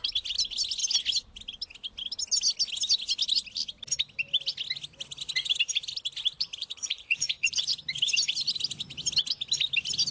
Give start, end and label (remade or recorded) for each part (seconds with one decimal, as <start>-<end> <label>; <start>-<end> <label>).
0.0-6.6 recorded; 6.6-7.7 remade; 7.7-10.1 recorded